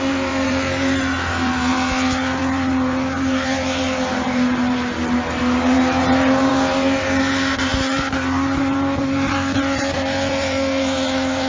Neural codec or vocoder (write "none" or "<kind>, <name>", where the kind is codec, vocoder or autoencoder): vocoder, BigVGAN v2